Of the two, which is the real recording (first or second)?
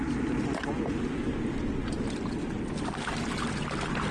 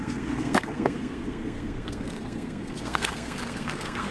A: first